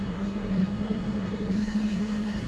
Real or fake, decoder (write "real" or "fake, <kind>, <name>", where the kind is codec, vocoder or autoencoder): fake, codec, SNAC